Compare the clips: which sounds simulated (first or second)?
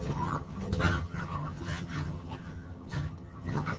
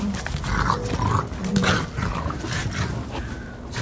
first